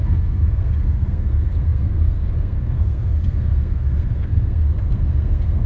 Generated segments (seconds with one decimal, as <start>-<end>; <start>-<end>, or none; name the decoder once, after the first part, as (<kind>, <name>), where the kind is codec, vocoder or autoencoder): 0.0-5.7 (codec, SNAC)